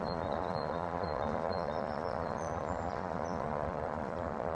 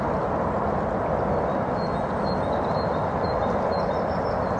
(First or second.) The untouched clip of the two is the second